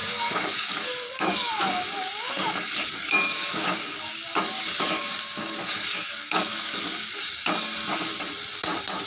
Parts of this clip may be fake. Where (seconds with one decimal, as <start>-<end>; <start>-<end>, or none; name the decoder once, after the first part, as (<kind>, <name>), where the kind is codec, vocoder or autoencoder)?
0.0-1.5 (codec, DAC); 2.0-7.2